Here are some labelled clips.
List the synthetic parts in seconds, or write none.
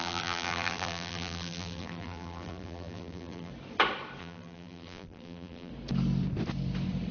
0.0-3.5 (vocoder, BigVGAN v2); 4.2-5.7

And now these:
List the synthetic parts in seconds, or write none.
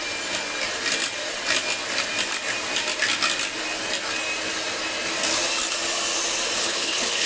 6.6-7.3 (codec, HILCodec)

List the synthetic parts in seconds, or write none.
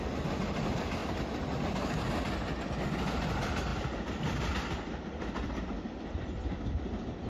none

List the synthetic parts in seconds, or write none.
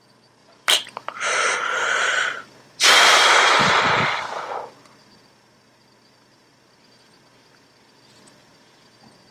0.4-1.5 (vocoder, BigVGAN v2); 3.2-3.8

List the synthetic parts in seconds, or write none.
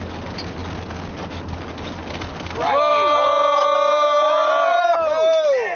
2.9-4.5 (vocoder, BigVGAN v2)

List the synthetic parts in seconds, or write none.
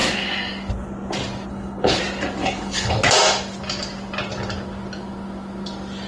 1.5-2.0 (codec, HILCodec); 2.4-3.0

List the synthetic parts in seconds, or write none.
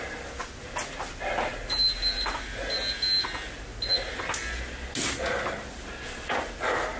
none